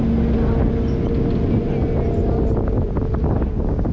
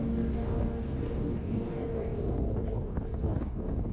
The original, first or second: first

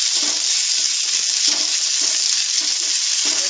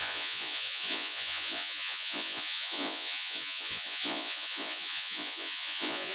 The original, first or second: first